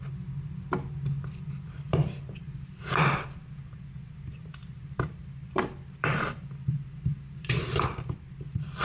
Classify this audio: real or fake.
fake